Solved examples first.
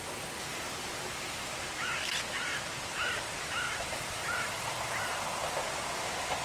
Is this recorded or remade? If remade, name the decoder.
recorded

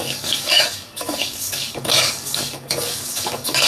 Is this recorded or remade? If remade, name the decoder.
remade, codec, DAC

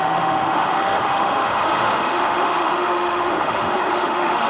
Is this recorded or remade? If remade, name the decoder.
remade, autoencoder, DAC-VAE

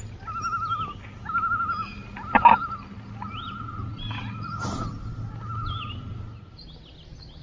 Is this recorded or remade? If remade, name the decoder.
recorded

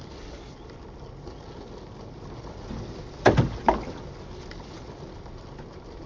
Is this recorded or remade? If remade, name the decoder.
recorded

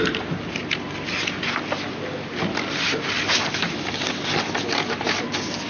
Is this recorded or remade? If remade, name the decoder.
recorded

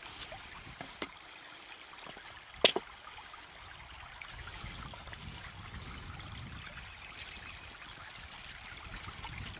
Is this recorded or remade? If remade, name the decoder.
recorded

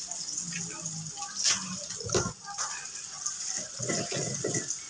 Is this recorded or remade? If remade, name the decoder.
recorded